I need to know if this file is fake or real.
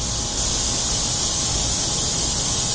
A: real